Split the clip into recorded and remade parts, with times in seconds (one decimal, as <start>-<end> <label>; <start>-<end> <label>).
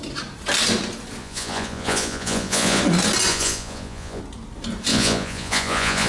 0.0-1.2 recorded; 1.2-2.8 remade; 2.8-3.3 recorded; 3.3-4.2 remade; 4.2-4.9 recorded; 4.9-6.1 remade